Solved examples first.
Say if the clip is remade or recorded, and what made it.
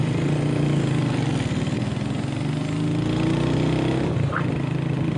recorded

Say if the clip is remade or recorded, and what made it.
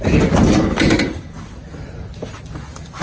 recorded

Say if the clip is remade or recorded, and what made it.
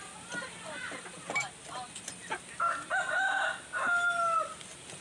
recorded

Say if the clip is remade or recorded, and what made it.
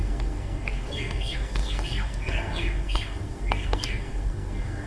remade, codec, SNAC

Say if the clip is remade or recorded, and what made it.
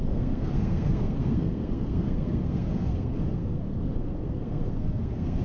remade, codec, SNAC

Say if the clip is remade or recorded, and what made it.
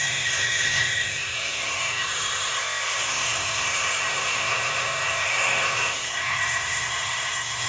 remade, codec, SNAC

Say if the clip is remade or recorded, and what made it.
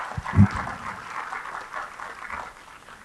recorded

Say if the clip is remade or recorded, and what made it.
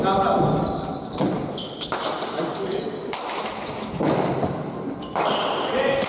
recorded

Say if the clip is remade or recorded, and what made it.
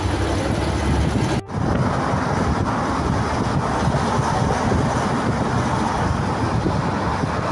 recorded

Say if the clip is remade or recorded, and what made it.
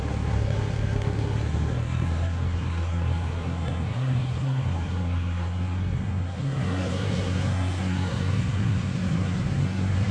remade, codec, SNAC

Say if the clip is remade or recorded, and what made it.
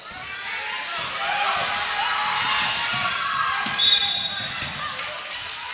recorded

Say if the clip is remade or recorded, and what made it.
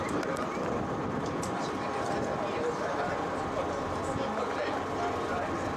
recorded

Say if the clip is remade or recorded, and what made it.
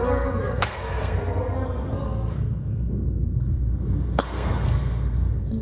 remade, codec, SNAC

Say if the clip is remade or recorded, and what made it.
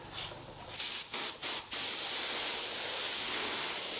recorded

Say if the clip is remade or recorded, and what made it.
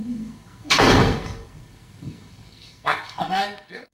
remade, codec, SNAC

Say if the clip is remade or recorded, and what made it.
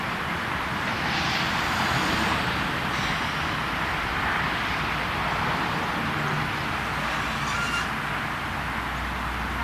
recorded